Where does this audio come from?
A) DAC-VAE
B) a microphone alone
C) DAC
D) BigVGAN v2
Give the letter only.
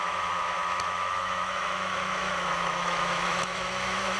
A